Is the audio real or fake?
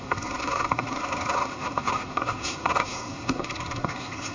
fake